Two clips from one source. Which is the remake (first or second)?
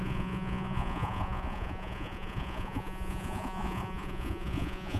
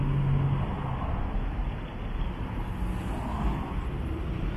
first